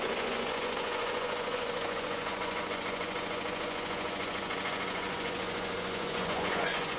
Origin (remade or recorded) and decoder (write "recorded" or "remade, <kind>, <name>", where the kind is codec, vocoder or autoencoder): remade, vocoder, Vocos